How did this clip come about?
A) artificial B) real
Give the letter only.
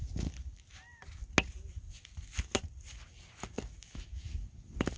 B